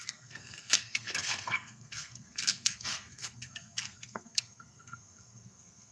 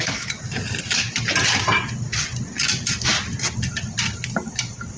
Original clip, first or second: second